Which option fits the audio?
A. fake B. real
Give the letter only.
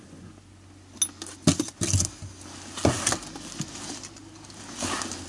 B